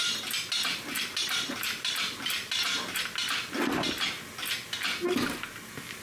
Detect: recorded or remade recorded